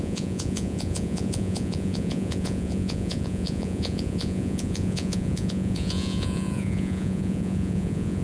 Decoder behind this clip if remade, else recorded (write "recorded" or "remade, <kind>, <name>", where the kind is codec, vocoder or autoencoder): remade, vocoder, Vocos